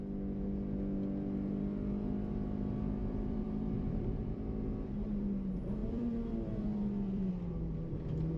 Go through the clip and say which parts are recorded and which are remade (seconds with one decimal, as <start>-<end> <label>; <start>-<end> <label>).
0.0-3.0 recorded; 3.0-4.4 remade; 4.4-5.8 recorded; 5.8-7.3 remade; 7.3-8.4 recorded